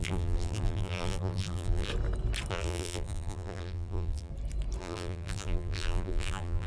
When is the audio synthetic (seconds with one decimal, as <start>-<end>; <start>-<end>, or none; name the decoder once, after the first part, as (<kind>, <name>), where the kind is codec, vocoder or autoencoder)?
0.0-1.9 (vocoder, BigVGAN v2); 2.5-4.3; 4.8-6.7